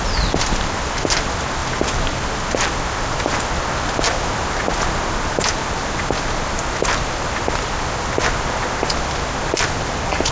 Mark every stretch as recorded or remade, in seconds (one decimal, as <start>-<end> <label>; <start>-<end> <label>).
0.0-10.3 recorded